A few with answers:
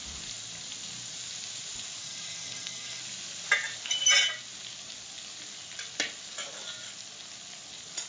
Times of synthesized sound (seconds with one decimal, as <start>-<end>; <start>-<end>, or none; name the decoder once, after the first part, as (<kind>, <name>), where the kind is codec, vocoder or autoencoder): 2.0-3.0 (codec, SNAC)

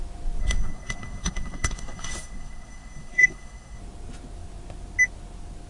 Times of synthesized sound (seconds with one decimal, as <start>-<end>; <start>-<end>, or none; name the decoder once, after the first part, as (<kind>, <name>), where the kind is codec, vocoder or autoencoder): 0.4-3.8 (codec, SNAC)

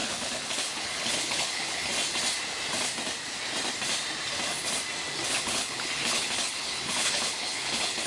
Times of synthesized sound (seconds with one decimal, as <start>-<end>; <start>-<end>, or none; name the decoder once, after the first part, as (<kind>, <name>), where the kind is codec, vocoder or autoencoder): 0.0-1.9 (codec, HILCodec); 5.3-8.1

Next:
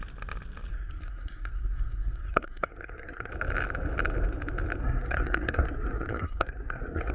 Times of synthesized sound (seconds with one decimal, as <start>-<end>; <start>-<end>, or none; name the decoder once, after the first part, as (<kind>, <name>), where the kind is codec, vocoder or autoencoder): 0.7-3.3 (codec, SNAC); 4.8-7.1

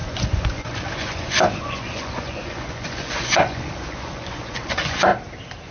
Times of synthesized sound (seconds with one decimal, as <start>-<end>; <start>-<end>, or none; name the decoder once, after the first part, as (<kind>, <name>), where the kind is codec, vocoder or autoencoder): 0.0-5.1 (vocoder, Vocos)

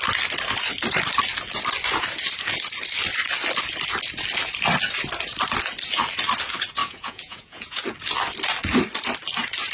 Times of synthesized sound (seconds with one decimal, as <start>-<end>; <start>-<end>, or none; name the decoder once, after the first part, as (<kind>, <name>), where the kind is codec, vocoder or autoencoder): 6.8-7.8 (vocoder, Vocos)

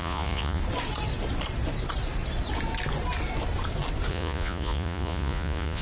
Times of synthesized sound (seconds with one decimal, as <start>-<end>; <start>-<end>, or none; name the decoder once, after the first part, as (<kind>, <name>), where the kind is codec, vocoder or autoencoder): 0.0-0.6 (vocoder, Vocos); 4.1-5.8